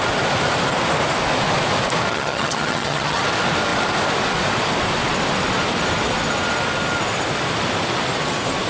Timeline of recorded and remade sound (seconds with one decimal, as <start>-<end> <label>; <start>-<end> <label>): 0.0-2.1 recorded; 2.1-3.2 remade; 3.2-8.7 recorded